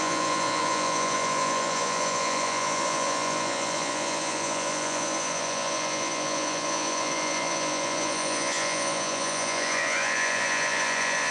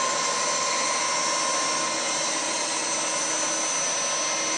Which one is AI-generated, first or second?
first